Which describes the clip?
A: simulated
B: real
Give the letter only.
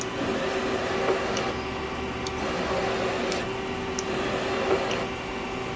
B